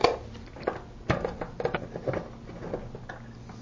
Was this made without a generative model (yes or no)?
yes